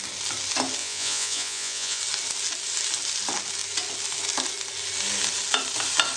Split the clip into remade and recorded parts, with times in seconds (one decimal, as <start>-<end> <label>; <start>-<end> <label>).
0.0-0.8 recorded; 0.8-2.0 remade; 2.0-6.2 recorded

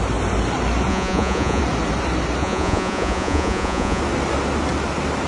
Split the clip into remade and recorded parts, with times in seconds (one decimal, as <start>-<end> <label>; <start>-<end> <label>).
0.0-0.9 recorded; 0.9-1.6 remade; 1.6-2.4 recorded; 2.4-4.0 remade; 4.0-5.3 recorded

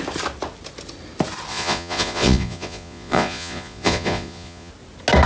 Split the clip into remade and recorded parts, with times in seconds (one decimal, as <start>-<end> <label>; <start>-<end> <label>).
0.0-1.5 recorded; 1.5-4.7 remade; 4.7-5.3 recorded

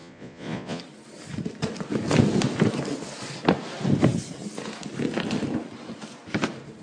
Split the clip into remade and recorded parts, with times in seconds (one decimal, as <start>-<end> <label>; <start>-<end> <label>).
0.0-0.8 remade; 0.8-6.8 recorded